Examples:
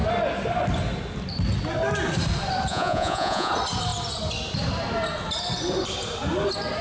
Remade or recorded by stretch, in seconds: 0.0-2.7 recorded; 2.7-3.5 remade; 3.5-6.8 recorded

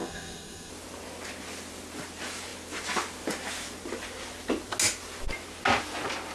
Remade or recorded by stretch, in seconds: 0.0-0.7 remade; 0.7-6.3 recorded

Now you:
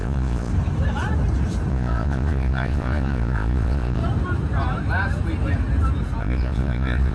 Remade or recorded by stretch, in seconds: 0.0-0.5 remade; 0.5-1.7 recorded; 1.7-4.0 remade; 4.0-6.2 recorded; 6.2-7.1 remade

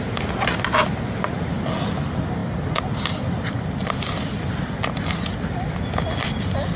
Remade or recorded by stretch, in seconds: 0.0-2.4 recorded; 2.4-4.8 remade; 4.8-6.8 recorded

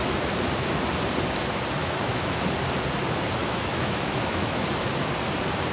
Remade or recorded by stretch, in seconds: 0.0-1.8 recorded; 1.8-2.4 remade; 2.4-3.4 recorded; 3.4-4.6 remade; 4.6-5.7 recorded

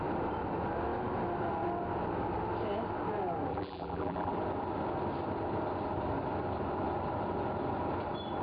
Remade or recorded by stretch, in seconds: 0.0-3.5 recorded; 3.5-4.3 remade; 4.3-8.4 recorded